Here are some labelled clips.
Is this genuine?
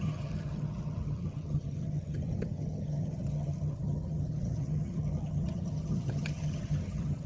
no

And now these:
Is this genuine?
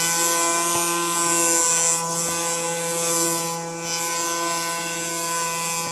yes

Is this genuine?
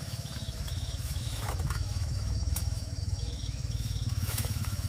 no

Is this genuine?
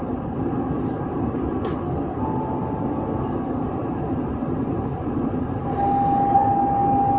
yes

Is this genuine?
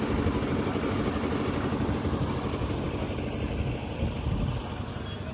yes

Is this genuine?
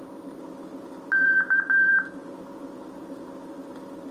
yes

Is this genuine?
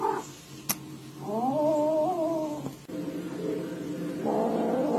yes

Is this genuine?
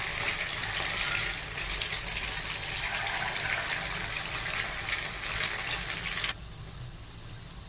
yes